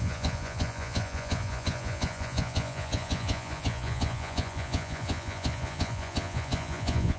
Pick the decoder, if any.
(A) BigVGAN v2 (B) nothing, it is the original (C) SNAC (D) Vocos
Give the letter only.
D